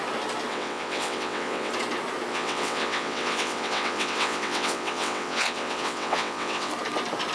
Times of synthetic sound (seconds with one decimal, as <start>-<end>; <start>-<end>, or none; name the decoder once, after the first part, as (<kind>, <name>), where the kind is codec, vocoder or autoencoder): 0.5-1.7 (vocoder, WaveNeXt); 2.3-6.7